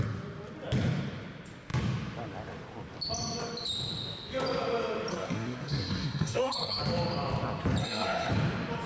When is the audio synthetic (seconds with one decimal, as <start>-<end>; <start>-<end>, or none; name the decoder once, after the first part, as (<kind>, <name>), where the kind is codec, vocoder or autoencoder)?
5.1-6.8 (codec, SNAC); 7.8-8.3